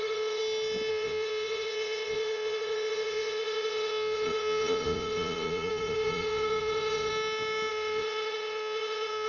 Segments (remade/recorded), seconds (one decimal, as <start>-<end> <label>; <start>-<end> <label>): 0.0-0.4 remade; 0.4-0.9 recorded; 0.9-7.1 remade; 7.1-7.7 recorded; 7.7-9.3 remade